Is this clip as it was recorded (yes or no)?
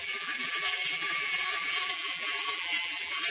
no